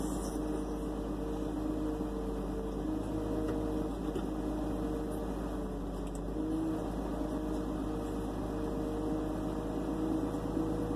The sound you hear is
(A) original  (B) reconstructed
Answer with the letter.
A